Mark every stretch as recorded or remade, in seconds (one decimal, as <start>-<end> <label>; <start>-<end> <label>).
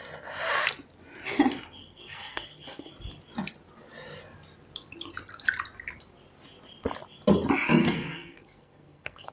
0.0-1.8 recorded; 1.8-2.9 remade; 2.9-7.8 recorded; 7.8-9.3 remade